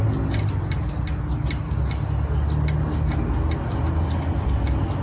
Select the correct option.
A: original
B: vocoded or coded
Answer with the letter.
A